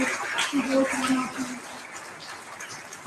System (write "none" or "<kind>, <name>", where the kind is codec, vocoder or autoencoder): none